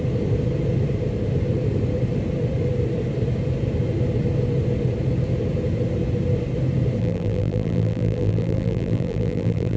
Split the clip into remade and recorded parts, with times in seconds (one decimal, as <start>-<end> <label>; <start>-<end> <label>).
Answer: 0.0-7.0 recorded; 7.0-9.8 remade